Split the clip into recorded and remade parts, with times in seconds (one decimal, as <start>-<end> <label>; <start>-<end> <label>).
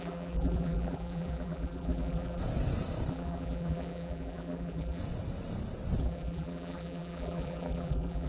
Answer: 0.0-2.4 remade; 2.4-3.1 recorded; 3.1-5.0 remade; 5.0-6.0 recorded; 6.0-8.3 remade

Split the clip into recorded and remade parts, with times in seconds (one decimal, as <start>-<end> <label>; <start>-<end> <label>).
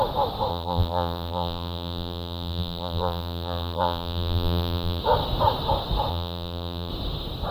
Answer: 0.0-0.5 recorded; 0.5-5.0 remade; 5.0-6.1 recorded; 6.1-6.9 remade; 6.9-7.5 recorded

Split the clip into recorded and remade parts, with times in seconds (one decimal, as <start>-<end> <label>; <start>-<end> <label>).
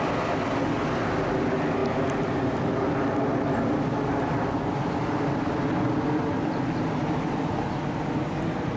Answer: 0.0-1.8 recorded; 1.8-3.1 remade; 3.1-8.8 recorded